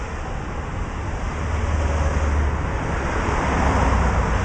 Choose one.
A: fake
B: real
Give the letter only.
B